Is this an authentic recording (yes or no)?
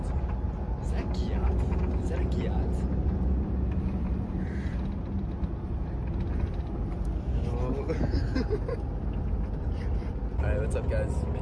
yes